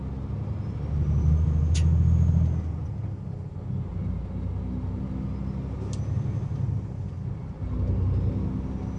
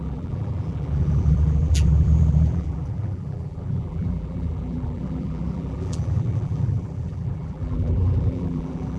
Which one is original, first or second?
first